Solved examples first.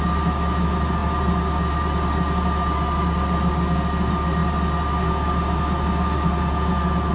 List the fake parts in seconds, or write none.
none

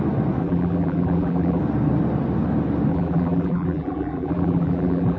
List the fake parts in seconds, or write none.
0.4-1.6 (vocoder, BigVGAN v2); 2.9-5.2

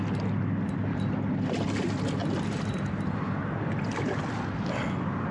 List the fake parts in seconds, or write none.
none

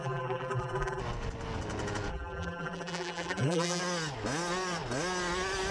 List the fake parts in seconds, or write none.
0.0-1.0 (vocoder, BigVGAN v2); 2.1-3.8

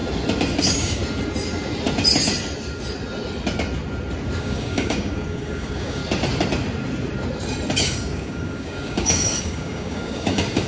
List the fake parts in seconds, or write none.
0.6-1.0 (codec, DAC); 4.4-6.0; 7.8-10.7

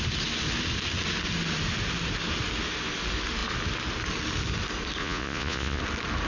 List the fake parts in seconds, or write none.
5.0-5.8 (vocoder, Vocos)